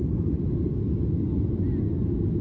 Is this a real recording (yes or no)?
yes